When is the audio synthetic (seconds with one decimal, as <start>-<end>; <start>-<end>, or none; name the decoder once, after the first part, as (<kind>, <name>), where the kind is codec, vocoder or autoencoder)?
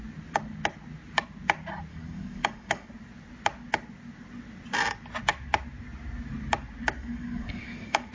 1.9-2.9 (codec, DAC); 7.0-8.1